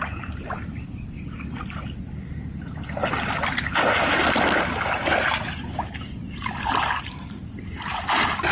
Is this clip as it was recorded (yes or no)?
yes